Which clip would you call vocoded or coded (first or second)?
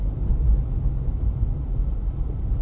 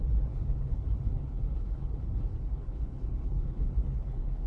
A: second